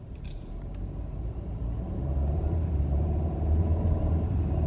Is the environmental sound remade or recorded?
remade